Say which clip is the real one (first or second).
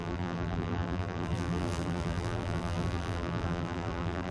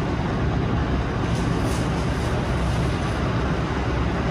second